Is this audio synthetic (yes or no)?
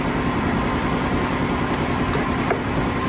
no